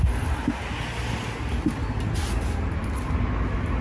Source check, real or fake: real